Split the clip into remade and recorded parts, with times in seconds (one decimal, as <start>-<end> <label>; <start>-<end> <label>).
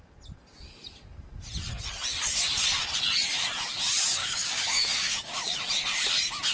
0.0-4.2 recorded; 4.2-5.6 remade; 5.6-6.5 recorded